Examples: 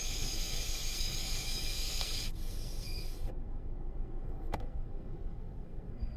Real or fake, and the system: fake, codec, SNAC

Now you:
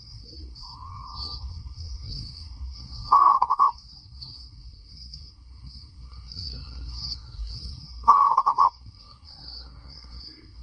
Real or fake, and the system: fake, codec, SNAC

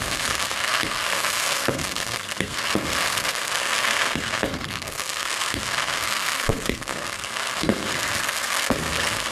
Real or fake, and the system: fake, codec, SNAC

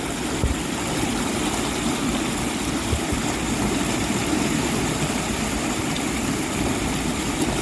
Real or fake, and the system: real